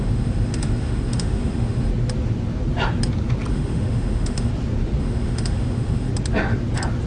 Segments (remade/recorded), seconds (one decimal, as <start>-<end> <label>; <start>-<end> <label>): 0.0-1.9 remade; 1.9-3.5 recorded; 3.5-4.5 remade; 4.5-5.0 recorded; 5.0-6.1 remade; 6.1-7.1 recorded